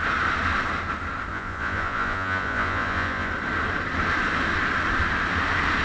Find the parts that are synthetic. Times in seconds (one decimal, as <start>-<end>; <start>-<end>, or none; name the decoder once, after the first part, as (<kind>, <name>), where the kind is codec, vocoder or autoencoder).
1.3-3.3 (vocoder, Vocos)